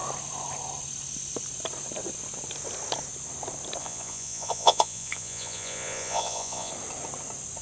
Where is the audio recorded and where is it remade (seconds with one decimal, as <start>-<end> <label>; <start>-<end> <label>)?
0.0-3.8 recorded; 3.8-6.7 remade; 6.7-7.6 recorded